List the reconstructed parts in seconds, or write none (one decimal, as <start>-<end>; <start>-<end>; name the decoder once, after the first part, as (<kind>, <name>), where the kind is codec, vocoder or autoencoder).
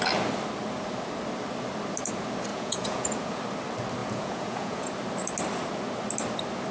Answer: 2.5-3.3 (vocoder, Vocos); 4.0-4.9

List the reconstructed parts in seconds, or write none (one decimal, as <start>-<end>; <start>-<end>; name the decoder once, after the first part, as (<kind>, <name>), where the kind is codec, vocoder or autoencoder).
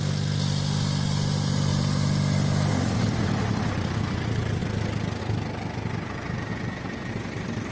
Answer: 6.5-7.1 (vocoder, Vocos)